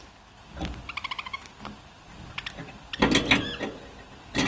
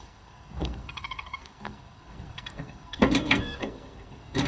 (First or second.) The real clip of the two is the first